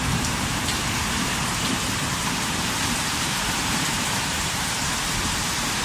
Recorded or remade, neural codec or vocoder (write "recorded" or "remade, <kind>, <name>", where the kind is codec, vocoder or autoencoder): remade, vocoder, BigVGAN v2